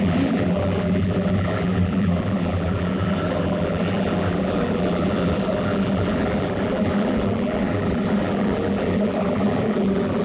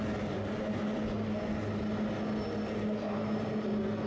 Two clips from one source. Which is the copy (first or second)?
first